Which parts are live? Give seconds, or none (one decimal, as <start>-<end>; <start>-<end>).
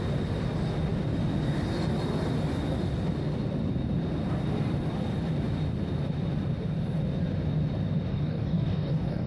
0.0-8.1